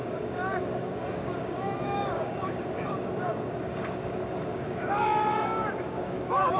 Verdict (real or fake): fake